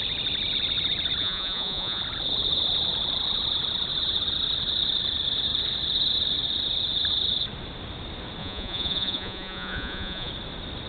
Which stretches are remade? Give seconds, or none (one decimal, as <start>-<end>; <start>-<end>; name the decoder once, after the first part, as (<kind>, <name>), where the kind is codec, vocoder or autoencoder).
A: 1.2-2.0 (vocoder, Vocos); 8.4-10.3